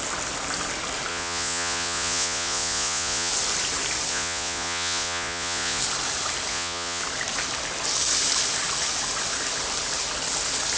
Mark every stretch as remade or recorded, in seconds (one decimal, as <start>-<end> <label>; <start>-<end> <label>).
0.0-1.1 recorded; 1.1-3.3 remade; 3.3-4.1 recorded; 4.1-5.8 remade; 5.8-6.5 recorded; 6.5-7.0 remade; 7.0-10.8 recorded